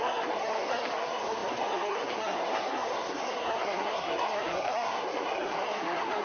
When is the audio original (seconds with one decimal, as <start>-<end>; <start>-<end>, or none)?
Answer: none